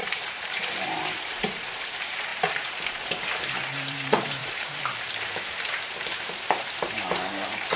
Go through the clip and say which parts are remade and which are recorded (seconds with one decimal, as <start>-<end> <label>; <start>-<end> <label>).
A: 0.0-2.3 remade; 2.3-2.9 recorded; 2.9-7.8 remade